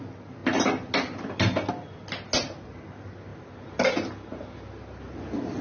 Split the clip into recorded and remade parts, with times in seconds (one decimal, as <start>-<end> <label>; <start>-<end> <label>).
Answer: 0.0-5.6 recorded